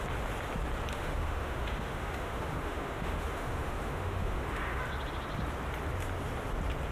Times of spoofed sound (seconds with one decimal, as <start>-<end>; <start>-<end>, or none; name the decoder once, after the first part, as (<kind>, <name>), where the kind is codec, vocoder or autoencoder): 0.9-4.8 (autoencoder, DAC-VAE)